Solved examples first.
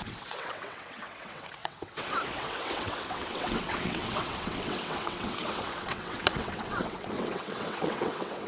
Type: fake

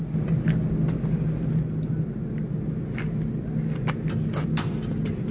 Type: real